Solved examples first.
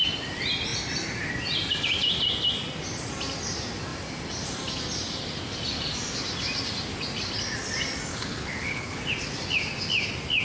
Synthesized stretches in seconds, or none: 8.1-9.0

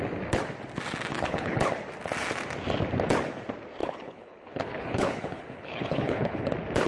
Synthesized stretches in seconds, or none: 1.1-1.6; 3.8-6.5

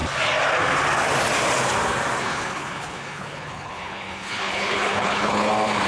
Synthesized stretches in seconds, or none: 2.2-5.5

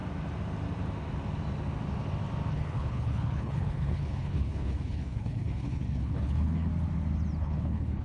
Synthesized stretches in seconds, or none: 2.5-6.7; 7.4-8.0